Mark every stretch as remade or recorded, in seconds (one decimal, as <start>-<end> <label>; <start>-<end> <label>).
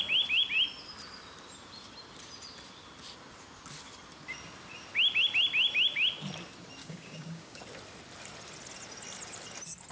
0.0-6.8 recorded; 6.8-7.6 remade; 7.6-9.9 recorded